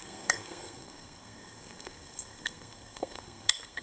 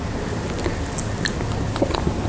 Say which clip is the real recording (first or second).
second